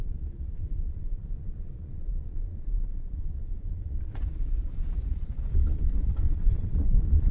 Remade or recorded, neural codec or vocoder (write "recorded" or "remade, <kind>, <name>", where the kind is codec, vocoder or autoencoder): remade, vocoder, Vocos